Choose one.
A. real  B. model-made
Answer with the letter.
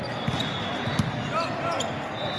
A